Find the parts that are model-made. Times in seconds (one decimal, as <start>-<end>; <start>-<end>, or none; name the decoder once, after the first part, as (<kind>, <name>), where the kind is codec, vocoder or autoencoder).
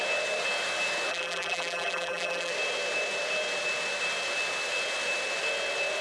1.1-2.5 (vocoder, BigVGAN v2)